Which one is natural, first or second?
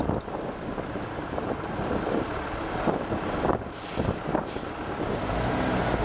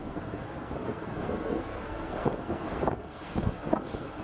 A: first